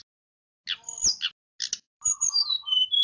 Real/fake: real